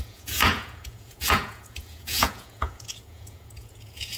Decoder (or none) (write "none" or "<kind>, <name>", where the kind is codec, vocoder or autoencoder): vocoder, Vocos